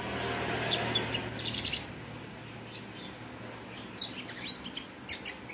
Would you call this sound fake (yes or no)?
no